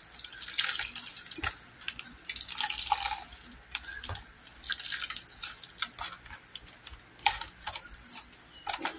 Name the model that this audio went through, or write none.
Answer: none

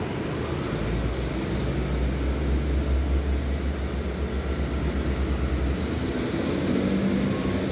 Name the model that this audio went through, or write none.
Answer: none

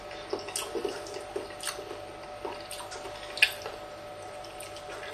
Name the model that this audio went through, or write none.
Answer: none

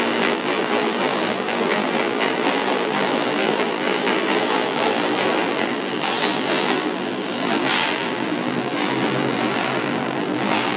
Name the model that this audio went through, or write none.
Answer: vocoder, BigVGAN v2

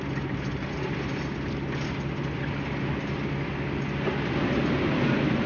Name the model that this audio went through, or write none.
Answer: none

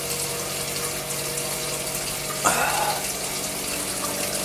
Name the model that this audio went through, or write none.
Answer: none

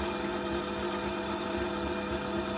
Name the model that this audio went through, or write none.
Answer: none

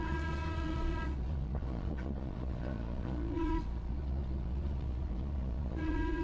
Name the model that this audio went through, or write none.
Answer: vocoder, Vocos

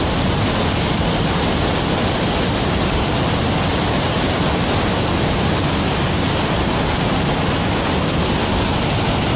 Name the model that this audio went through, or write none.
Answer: none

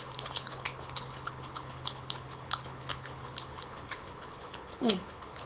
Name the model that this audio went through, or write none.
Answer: codec, HILCodec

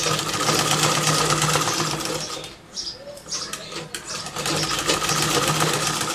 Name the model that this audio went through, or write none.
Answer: none